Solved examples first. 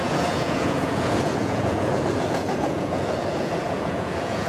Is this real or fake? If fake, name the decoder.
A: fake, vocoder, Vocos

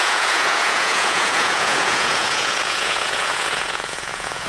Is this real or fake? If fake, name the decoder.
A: fake, vocoder, Vocos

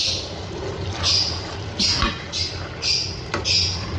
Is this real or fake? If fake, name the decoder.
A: real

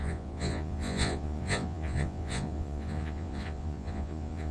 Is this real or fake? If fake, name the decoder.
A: fake, vocoder, Vocos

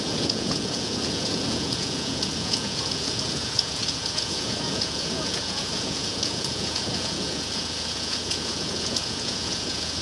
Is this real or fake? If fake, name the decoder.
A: fake, vocoder, Vocos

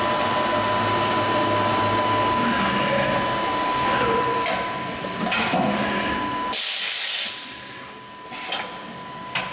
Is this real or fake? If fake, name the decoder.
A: real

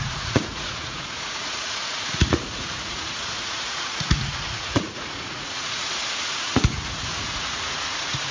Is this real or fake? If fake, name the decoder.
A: fake, vocoder, Vocos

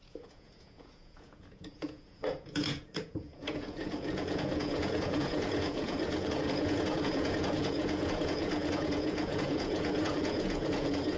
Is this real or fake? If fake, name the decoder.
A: fake, vocoder, Vocos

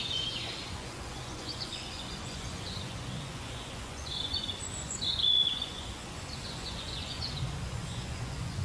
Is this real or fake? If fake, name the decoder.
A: fake, vocoder, Vocos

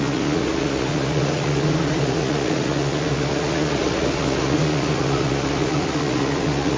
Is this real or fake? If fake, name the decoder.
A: fake, vocoder, Vocos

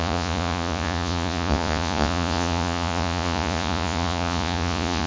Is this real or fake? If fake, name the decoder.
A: fake, vocoder, Vocos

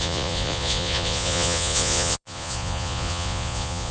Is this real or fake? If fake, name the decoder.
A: fake, vocoder, Vocos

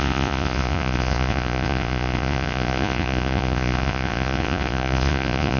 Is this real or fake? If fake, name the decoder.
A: fake, vocoder, Vocos